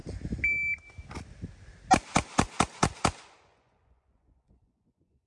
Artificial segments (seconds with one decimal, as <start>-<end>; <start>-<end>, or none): 3.2-5.3